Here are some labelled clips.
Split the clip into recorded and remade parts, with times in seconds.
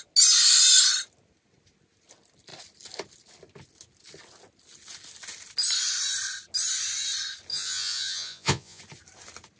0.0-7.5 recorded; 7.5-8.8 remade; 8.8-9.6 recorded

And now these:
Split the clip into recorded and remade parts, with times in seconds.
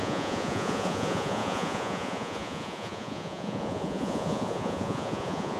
0.0-5.6 remade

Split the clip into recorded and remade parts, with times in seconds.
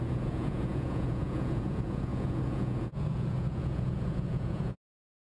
0.0-5.4 remade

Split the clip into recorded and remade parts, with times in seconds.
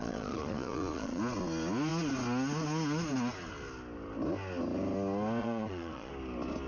0.0-1.2 remade; 1.2-5.4 recorded; 5.4-6.1 remade; 6.1-6.7 recorded